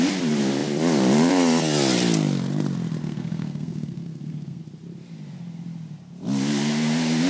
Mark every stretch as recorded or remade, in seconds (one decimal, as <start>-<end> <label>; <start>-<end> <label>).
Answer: 0.0-3.0 recorded; 3.0-4.6 remade; 4.6-7.3 recorded